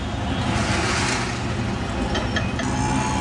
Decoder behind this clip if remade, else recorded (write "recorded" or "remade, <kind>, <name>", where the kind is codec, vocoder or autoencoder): recorded